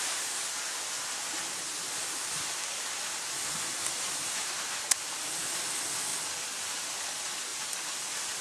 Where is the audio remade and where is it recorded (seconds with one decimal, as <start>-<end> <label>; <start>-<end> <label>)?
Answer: 0.0-2.0 recorded; 2.0-5.4 remade; 5.4-6.1 recorded; 6.1-6.7 remade; 6.7-7.5 recorded; 7.5-8.4 remade